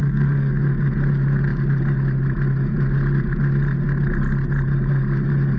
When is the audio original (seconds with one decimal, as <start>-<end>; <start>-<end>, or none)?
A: 0.6-5.6